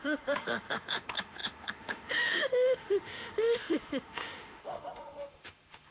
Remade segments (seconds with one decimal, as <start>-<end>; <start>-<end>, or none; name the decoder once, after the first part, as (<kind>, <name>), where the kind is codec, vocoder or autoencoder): 0.0-5.9 (autoencoder, DAC-VAE)